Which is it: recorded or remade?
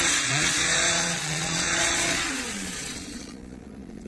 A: remade